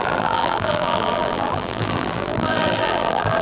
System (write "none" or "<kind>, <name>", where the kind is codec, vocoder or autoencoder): vocoder, BigVGAN v2